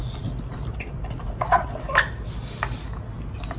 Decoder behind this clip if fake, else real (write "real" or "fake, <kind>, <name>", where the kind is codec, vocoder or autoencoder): real